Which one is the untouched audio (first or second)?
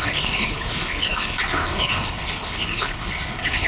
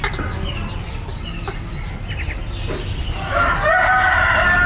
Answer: second